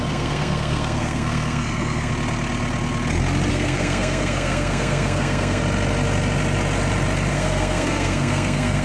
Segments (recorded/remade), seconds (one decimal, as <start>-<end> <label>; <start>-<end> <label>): 0.0-2.1 remade; 2.1-3.5 recorded; 3.5-5.6 remade; 5.6-7.3 recorded; 7.3-8.8 remade